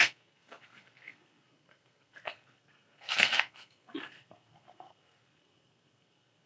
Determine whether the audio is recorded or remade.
remade